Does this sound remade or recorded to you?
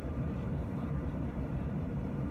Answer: remade